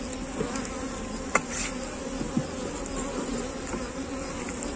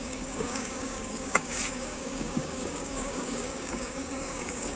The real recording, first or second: first